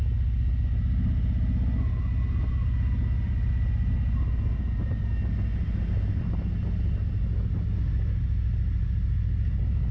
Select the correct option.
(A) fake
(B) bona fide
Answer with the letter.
B